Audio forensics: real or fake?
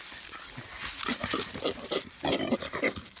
real